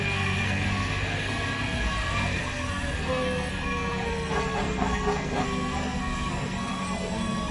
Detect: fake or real fake